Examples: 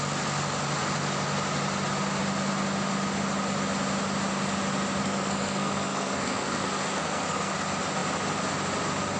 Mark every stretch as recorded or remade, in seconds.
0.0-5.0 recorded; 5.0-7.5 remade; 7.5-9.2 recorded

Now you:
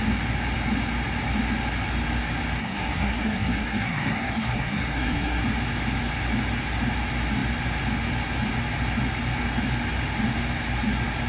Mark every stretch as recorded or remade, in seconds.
0.0-2.6 recorded; 2.6-5.4 remade; 5.4-11.3 recorded